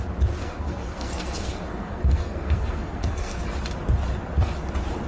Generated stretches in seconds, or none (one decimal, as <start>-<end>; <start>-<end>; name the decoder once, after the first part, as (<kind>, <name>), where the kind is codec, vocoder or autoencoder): 0.4-3.4 (codec, SNAC)